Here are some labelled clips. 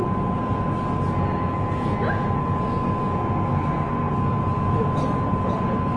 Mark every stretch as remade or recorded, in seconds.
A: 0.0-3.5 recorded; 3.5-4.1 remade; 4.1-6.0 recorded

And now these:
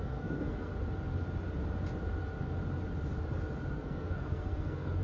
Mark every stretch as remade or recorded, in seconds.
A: 0.0-0.7 remade; 0.7-3.7 recorded; 3.7-5.0 remade

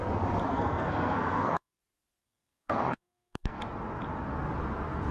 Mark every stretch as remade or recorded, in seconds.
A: 0.0-0.5 recorded; 0.5-1.8 remade; 1.8-2.2 recorded; 2.2-3.6 remade; 3.6-5.1 recorded

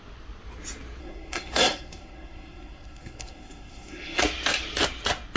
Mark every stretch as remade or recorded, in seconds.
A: 0.0-1.0 recorded; 1.0-4.2 remade; 4.2-5.4 recorded